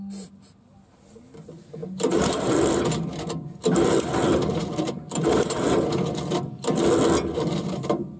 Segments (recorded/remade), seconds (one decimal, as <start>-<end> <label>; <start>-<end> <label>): 0.0-1.8 recorded; 1.8-2.9 remade; 2.9-4.6 recorded; 4.6-5.6 remade; 5.6-8.2 recorded